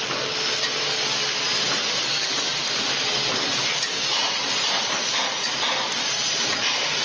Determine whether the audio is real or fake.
real